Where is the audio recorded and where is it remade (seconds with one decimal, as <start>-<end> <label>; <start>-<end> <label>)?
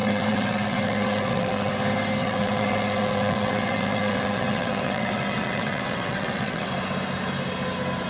0.0-1.7 remade; 1.7-2.2 recorded; 2.2-6.7 remade; 6.7-8.1 recorded